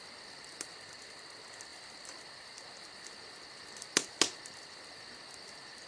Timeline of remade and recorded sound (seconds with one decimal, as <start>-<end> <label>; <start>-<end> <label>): 0.0-5.9 recorded